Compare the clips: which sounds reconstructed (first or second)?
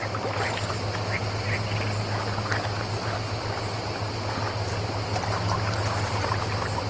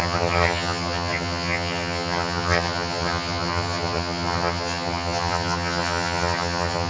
second